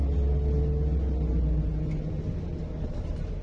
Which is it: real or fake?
real